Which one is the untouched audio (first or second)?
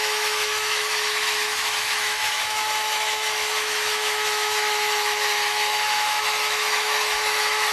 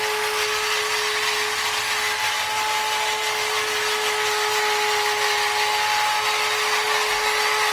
second